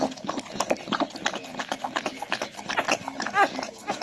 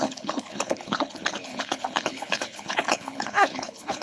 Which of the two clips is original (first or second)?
first